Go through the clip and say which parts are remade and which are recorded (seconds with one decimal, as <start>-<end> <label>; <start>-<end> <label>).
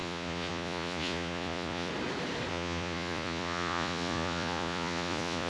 0.0-1.9 remade; 1.9-2.5 recorded; 2.5-5.5 remade